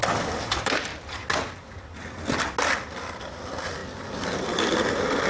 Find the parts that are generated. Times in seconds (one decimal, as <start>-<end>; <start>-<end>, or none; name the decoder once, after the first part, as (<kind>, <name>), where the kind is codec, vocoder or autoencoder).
0.0-0.9 (vocoder, BigVGAN v2); 2.6-3.8